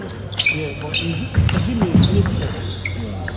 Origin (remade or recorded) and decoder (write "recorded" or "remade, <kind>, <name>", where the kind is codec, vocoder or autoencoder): recorded